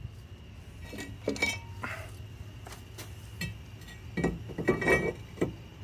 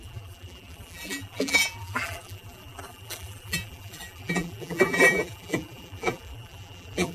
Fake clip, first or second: second